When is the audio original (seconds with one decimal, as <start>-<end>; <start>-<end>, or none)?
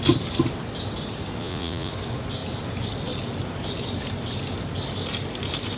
0.0-1.4; 1.9-5.8